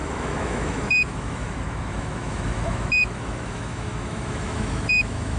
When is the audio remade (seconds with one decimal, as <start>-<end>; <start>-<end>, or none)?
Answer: 0.0-5.4